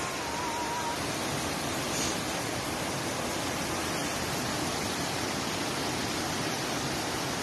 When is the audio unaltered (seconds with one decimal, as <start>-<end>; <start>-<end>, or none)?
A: 0.0-7.4